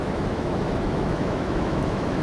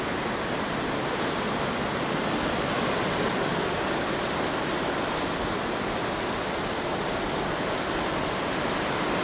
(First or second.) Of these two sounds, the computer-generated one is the first